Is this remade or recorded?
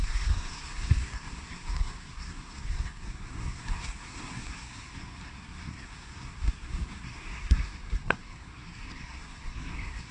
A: remade